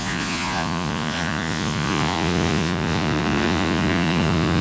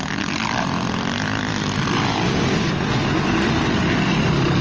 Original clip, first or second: second